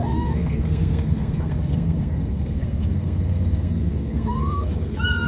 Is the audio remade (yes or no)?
yes